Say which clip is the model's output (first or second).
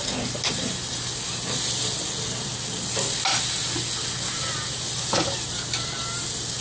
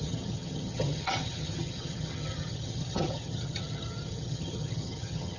second